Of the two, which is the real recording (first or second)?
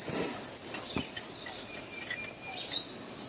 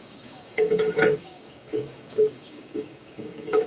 first